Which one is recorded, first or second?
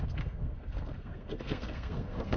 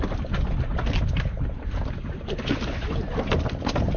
second